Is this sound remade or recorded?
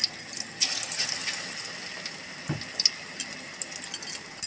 recorded